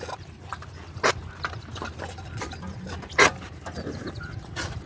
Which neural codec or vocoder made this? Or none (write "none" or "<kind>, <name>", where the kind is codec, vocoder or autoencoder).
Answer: none